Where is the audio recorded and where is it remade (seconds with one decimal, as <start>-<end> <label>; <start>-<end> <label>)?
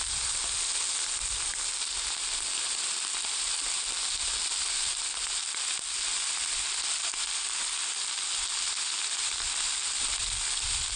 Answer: 0.0-11.0 recorded